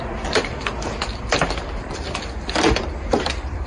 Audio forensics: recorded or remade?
remade